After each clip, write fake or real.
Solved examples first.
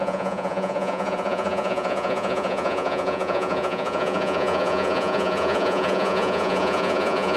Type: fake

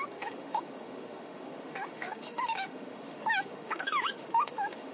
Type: fake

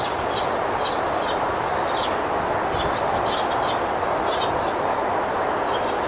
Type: real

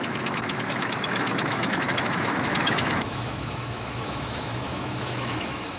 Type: fake